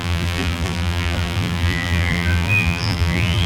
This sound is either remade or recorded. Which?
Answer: remade